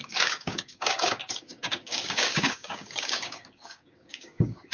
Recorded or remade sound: remade